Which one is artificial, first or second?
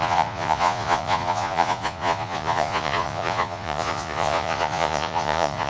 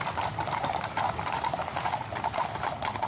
first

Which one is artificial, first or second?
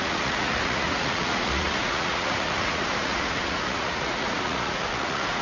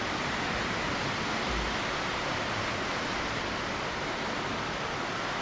first